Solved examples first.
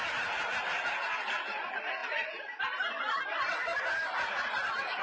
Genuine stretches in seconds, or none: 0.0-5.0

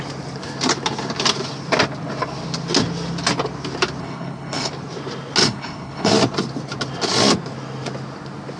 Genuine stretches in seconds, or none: 0.0-4.0; 4.7-5.4; 6.1-8.6

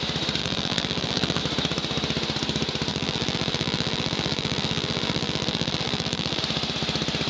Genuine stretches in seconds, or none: 0.0-0.4; 1.4-2.9; 6.4-7.3

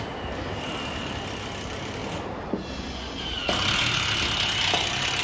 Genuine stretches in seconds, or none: 0.0-5.2

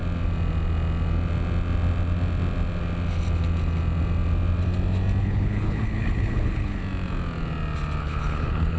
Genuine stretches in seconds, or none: 0.0-5.2; 6.8-8.0

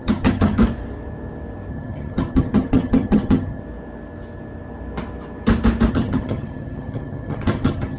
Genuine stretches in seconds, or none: 0.6-1.7; 3.6-5.9

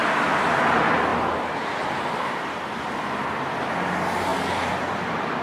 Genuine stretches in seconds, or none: 0.0-5.4

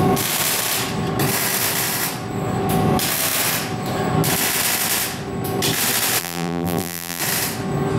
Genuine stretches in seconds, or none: 0.0-6.2; 7.2-8.0